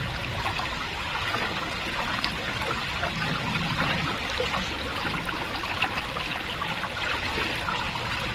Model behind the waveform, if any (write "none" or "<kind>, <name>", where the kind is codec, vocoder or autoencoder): none